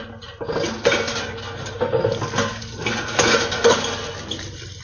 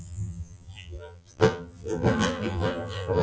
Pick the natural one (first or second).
first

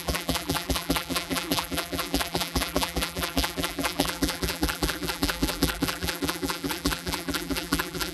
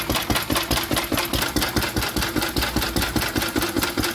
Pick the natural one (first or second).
second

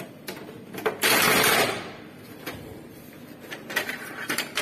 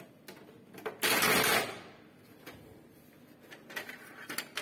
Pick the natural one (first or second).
second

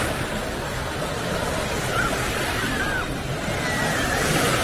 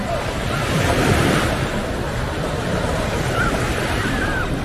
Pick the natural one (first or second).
first